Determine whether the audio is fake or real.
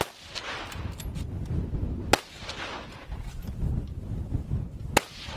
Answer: real